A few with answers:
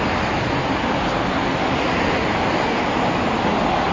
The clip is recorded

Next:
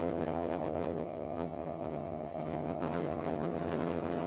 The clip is remade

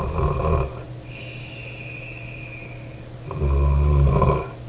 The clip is recorded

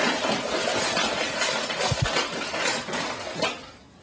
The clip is recorded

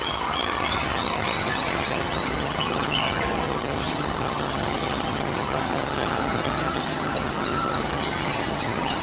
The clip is remade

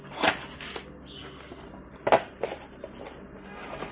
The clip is recorded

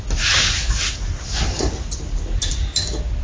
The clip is recorded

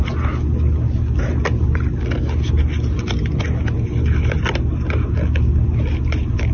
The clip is recorded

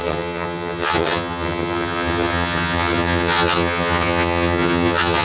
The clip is remade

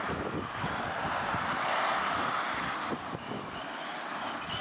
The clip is recorded